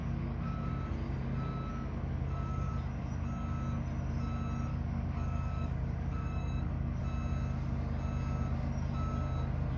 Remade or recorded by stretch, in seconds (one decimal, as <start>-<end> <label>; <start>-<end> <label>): 0.0-0.7 remade; 0.7-1.7 recorded; 1.7-2.7 remade; 2.7-4.7 recorded; 4.7-7.0 remade; 7.0-9.8 recorded